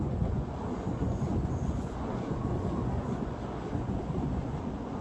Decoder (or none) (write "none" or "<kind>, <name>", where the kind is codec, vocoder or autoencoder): vocoder, Vocos